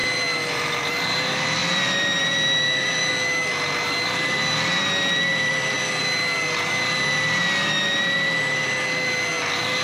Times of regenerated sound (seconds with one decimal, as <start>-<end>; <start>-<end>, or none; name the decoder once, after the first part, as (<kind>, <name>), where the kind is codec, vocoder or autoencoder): 0.0-0.9 (vocoder, BigVGAN v2); 1.6-3.1; 5.3-6.0; 7.6-8.8